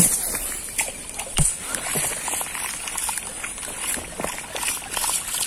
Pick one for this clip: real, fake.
fake